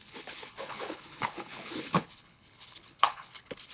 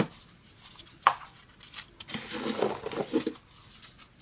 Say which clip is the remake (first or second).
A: first